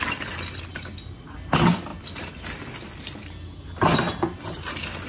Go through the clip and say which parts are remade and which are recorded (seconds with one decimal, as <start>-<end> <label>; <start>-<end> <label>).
0.0-5.1 recorded